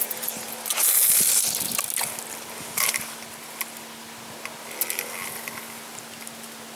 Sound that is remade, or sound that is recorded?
recorded